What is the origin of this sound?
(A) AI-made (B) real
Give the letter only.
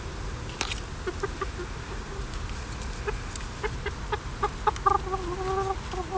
B